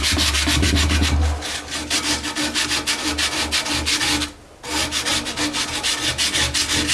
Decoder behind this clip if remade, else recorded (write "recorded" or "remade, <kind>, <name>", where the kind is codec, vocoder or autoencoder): recorded